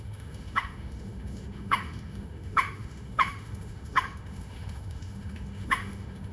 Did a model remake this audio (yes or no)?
yes